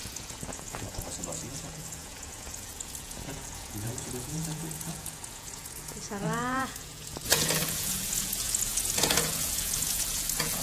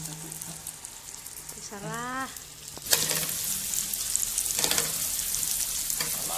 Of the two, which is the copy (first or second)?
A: first